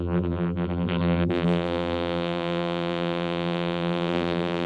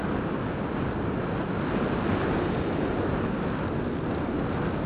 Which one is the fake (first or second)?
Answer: first